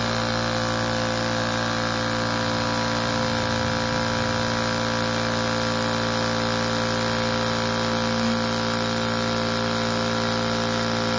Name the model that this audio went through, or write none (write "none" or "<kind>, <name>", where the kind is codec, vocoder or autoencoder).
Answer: none